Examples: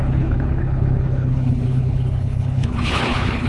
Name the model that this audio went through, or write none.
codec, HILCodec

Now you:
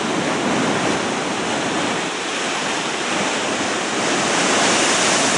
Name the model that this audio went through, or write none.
none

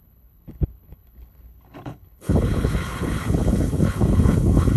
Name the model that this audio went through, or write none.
codec, HILCodec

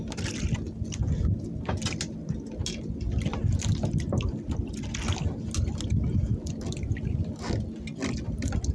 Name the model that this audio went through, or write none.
none